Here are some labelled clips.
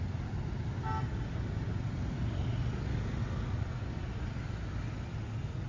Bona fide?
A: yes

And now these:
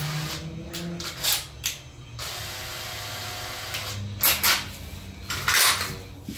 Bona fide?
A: yes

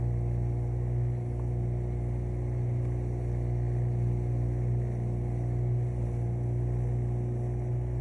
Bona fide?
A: yes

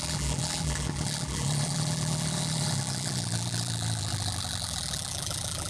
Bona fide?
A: no